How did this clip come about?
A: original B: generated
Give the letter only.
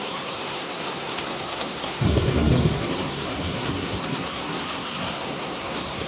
B